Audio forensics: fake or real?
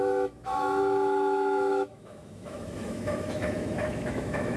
fake